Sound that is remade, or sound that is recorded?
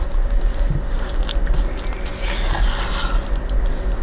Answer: recorded